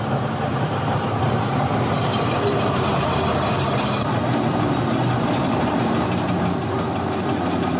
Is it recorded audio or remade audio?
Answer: remade